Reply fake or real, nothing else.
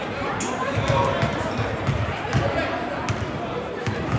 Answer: real